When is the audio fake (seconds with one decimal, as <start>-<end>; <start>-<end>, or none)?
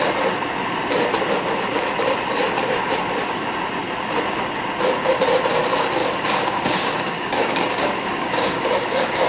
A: 6.0-9.3